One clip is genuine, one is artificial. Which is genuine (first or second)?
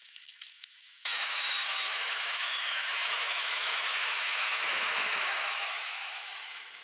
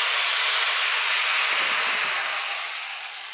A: second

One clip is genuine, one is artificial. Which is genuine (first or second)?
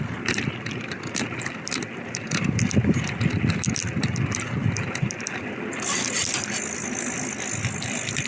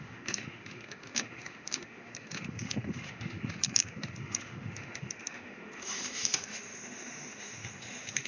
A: first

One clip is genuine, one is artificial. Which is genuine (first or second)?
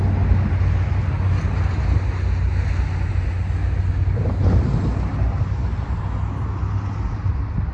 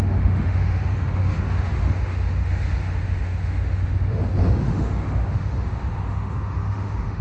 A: first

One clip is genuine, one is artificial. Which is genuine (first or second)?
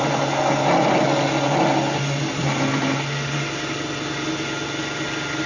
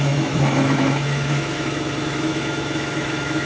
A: first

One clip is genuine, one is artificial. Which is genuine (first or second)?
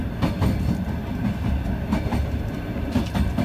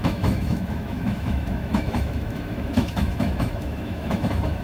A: first